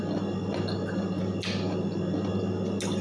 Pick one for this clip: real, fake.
real